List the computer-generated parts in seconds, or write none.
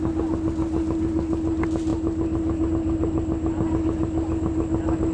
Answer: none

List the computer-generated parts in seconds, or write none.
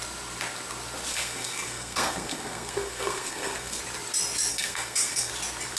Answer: 1.1-3.8 (codec, SNAC); 4.5-5.3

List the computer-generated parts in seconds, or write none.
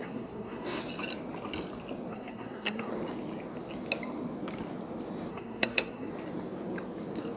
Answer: 0.0-0.8 (codec, SNAC); 2.1-2.9; 5.3-6.1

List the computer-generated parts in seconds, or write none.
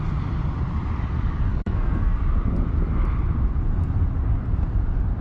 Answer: 1.5-2.2 (codec, SNAC)